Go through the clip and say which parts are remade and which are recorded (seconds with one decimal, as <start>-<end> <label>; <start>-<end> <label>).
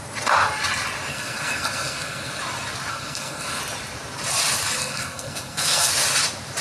0.0-1.1 recorded; 1.1-2.4 remade; 2.4-2.9 recorded; 2.9-3.6 remade; 3.6-4.8 recorded; 4.8-5.9 remade; 5.9-6.6 recorded